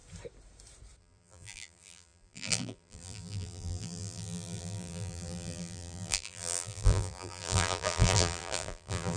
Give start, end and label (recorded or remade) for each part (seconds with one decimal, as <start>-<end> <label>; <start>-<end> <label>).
0.0-1.0 recorded; 1.0-9.2 remade